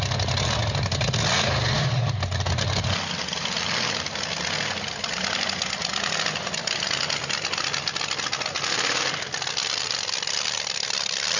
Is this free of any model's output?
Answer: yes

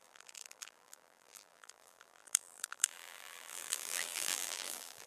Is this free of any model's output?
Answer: no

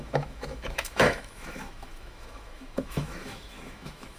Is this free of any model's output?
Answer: no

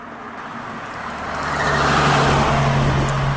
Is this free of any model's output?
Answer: yes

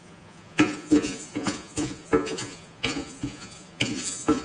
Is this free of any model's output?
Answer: no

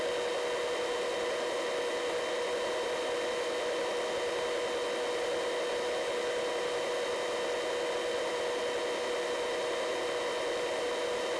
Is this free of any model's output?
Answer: yes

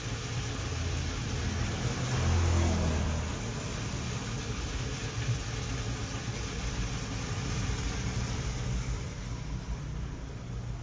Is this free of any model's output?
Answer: yes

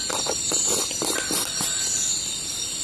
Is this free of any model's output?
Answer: yes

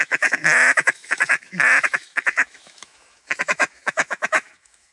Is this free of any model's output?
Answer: no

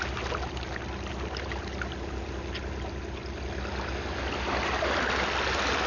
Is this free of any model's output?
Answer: yes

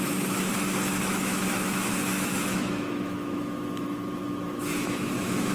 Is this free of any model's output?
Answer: no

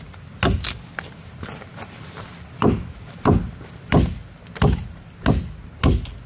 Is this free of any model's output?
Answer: yes